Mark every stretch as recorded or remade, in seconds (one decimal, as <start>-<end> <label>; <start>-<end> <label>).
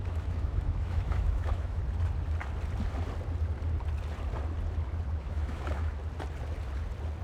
0.0-1.8 remade; 1.8-5.1 recorded; 5.1-5.9 remade; 5.9-7.2 recorded